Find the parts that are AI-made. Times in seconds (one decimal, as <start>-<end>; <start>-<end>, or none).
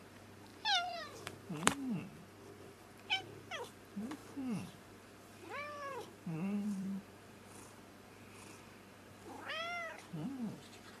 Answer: 0.0-2.0; 2.6-11.0